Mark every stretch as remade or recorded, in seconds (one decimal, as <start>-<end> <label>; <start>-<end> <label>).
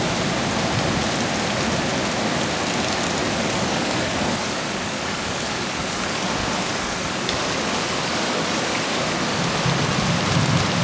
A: 0.0-3.2 recorded; 3.2-6.3 remade; 6.3-6.7 recorded; 6.7-9.4 remade; 9.4-10.8 recorded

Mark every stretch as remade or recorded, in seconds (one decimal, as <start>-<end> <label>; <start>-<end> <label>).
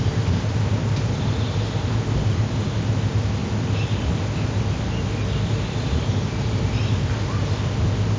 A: 0.0-8.2 recorded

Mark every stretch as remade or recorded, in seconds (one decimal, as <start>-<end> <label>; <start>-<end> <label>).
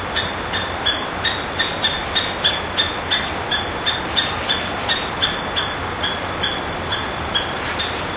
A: 0.0-2.0 remade; 2.0-6.6 recorded; 6.6-8.2 remade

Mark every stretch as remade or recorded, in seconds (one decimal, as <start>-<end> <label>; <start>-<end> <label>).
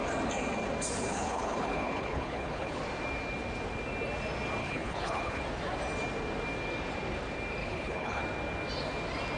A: 0.0-1.1 recorded; 1.1-2.8 remade; 2.8-4.6 recorded; 4.6-5.4 remade; 5.4-7.6 recorded; 7.6-8.2 remade; 8.2-9.4 recorded